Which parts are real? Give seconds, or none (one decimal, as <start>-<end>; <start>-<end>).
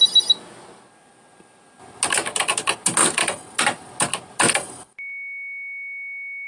0.0-6.5